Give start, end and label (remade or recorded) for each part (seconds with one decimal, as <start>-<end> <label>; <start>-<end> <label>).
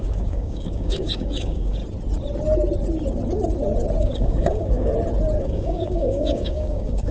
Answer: 0.0-1.8 remade; 1.8-4.0 recorded; 4.0-4.9 remade; 4.9-5.4 recorded; 5.4-7.1 remade